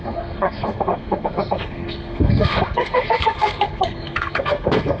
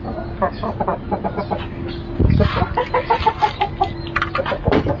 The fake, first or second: first